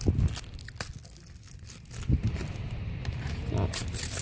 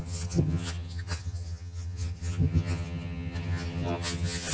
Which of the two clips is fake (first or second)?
second